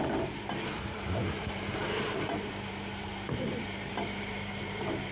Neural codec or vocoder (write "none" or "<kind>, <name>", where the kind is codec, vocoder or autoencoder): vocoder, BigVGAN v2